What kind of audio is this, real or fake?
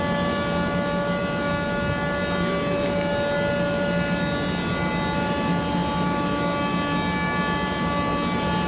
real